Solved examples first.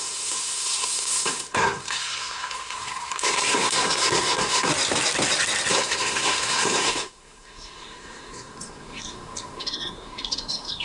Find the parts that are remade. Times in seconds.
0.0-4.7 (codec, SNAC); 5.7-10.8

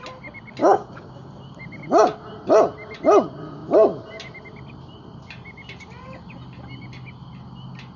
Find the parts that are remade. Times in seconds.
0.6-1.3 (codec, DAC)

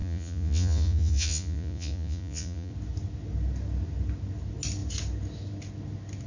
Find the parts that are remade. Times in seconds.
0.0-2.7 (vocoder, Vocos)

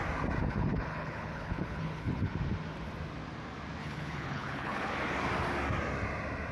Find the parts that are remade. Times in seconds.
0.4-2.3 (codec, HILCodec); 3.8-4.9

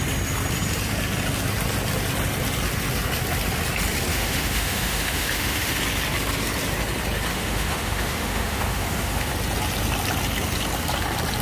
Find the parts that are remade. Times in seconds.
4.1-5.8 (autoencoder, DAC-VAE); 7.3-9.3

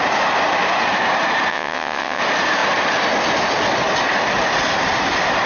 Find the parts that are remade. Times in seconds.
1.5-2.2 (vocoder, WaveNeXt)